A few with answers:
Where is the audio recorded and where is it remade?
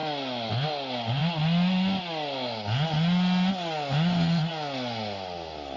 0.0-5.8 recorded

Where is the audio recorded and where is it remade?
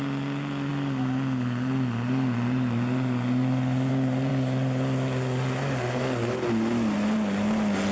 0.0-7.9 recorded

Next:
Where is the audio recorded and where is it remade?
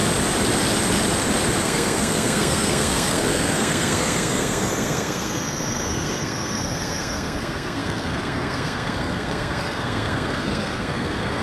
0.0-1.6 recorded; 1.6-11.4 remade